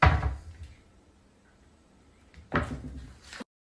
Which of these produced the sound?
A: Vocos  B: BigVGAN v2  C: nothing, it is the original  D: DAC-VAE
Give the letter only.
C